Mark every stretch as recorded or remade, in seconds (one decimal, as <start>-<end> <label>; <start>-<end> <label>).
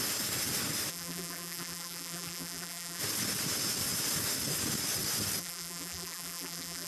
0.0-0.9 recorded; 0.9-3.0 remade; 3.0-5.4 recorded; 5.4-6.9 remade